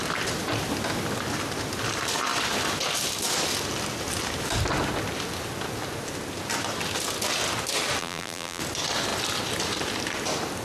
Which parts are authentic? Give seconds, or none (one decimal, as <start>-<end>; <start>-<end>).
0.0-8.0; 8.6-10.6